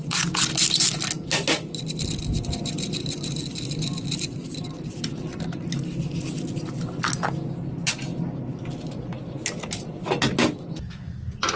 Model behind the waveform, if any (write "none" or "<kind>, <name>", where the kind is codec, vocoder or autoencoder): none